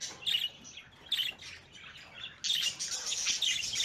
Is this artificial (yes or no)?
no